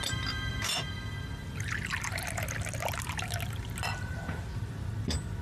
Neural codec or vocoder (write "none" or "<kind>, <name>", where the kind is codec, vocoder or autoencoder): none